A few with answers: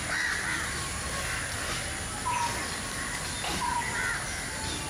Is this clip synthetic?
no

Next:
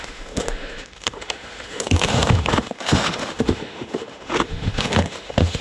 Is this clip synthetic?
yes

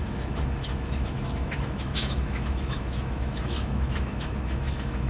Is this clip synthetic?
yes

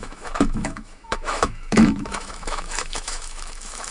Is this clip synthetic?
yes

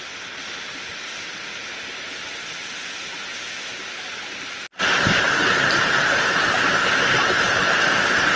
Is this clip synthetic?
no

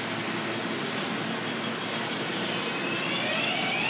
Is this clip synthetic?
no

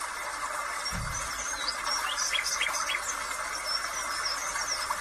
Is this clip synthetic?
no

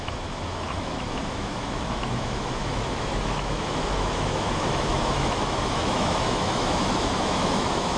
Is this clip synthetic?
yes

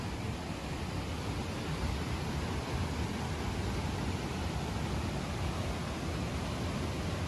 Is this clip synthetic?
no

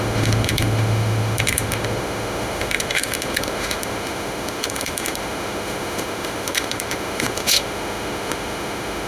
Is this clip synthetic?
yes